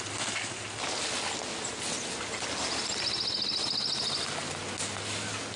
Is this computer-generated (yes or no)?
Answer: no